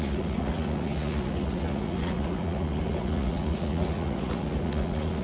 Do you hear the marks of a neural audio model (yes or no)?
yes